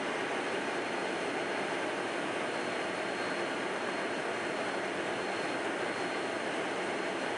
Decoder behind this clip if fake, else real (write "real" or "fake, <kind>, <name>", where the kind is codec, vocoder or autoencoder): real